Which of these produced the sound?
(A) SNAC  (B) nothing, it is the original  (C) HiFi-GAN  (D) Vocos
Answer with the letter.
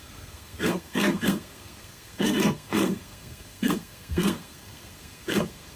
A